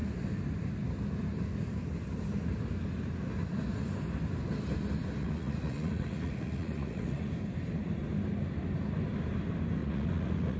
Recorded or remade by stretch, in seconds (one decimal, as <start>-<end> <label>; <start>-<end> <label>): 0.0-5.2 recorded; 5.2-7.3 remade; 7.3-9.8 recorded; 9.8-10.6 remade